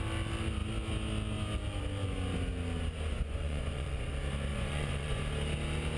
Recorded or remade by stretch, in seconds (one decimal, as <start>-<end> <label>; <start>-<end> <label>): 0.0-3.1 recorded; 3.1-4.1 remade; 4.1-4.5 recorded; 4.5-5.2 remade; 5.2-6.0 recorded